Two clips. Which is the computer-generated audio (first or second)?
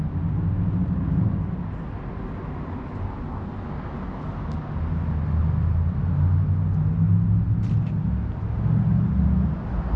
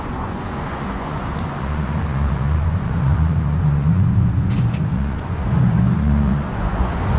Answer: second